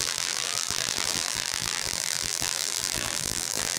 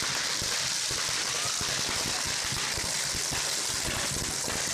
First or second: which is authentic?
second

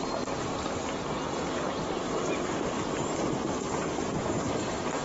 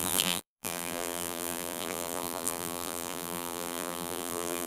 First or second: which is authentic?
first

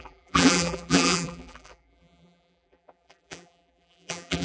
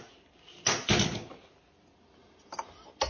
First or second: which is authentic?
second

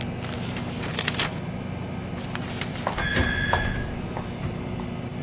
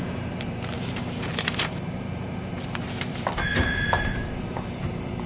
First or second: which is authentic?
first